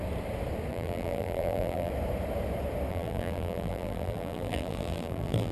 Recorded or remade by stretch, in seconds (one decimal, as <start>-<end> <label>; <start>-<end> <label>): 0.0-0.7 recorded; 0.7-1.9 remade; 1.9-2.9 recorded; 2.9-5.5 remade